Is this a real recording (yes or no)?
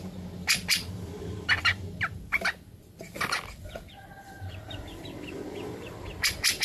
yes